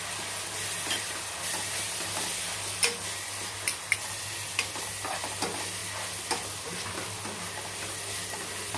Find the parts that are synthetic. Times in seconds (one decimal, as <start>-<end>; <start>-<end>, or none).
none